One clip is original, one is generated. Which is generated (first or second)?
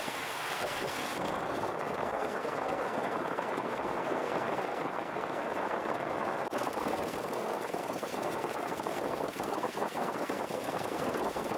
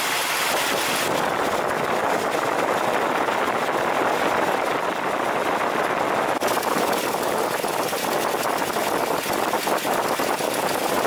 first